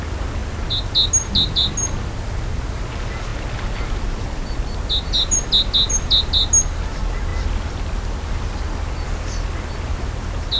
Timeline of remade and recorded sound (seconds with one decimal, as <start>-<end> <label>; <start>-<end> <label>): 0.0-10.6 recorded